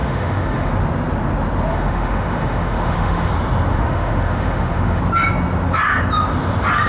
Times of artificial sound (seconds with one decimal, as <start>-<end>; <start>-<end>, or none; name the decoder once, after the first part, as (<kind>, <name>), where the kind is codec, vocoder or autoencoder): 0.0-0.7 (autoencoder, DAC-VAE); 1.7-3.3; 3.7-5.0